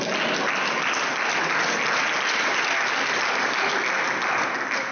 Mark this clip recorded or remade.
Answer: recorded